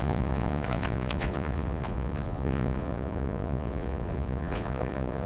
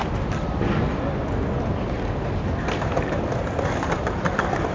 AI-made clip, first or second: first